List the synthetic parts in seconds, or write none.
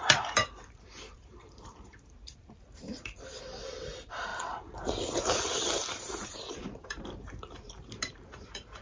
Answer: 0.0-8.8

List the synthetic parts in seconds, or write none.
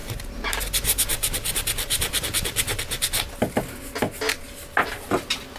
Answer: 0.0-0.6; 1.1-2.2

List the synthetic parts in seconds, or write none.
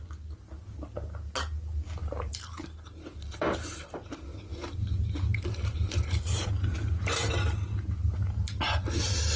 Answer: 2.0-3.8; 4.3-7.3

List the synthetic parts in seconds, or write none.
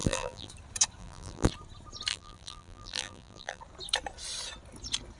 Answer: 0.0-0.5; 1.0-1.5; 2.1-3.6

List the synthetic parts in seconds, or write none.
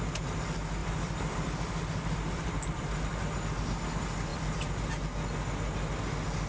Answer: 0.8-3.2; 4.3-4.9